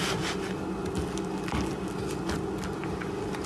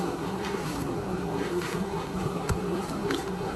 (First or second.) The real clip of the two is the first